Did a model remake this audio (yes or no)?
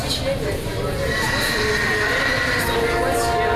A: no